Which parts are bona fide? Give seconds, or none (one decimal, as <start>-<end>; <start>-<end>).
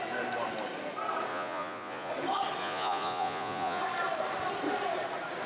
0.0-1.3; 2.1-2.6; 3.8-5.5